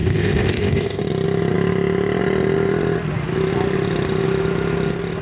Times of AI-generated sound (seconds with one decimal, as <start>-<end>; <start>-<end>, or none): 0.0-1.0